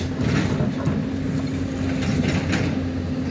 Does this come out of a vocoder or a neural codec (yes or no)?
no